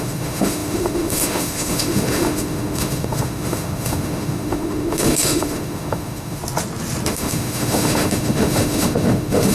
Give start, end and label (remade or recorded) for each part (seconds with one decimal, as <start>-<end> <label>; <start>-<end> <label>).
0.0-6.4 remade; 6.4-7.1 recorded; 7.1-9.5 remade